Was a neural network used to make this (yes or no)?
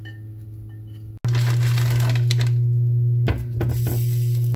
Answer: no